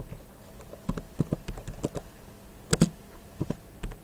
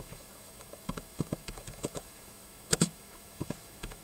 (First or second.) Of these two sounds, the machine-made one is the second